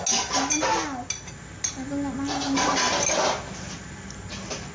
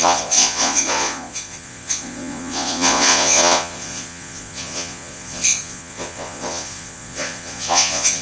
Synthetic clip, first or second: second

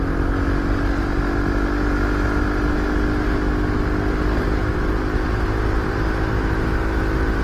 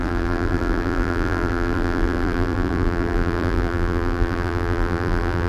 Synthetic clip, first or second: second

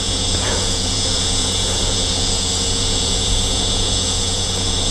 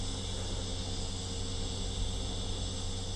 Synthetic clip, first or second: first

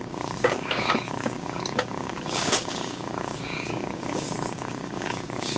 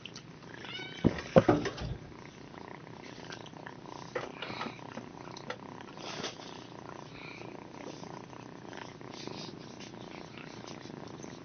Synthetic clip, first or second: first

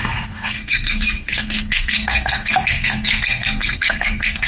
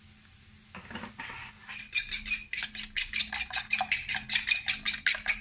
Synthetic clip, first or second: first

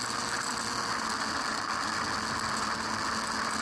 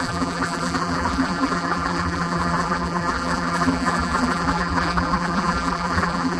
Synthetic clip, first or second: second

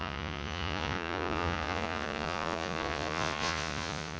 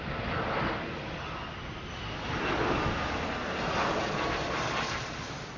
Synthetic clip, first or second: first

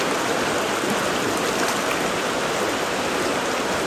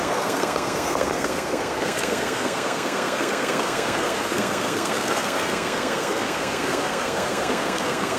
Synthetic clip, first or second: second